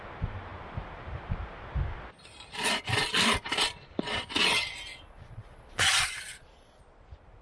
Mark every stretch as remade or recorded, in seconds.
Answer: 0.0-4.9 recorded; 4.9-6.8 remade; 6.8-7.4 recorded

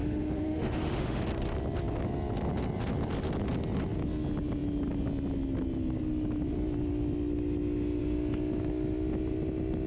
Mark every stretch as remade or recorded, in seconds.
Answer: 0.0-1.2 remade; 1.2-9.9 recorded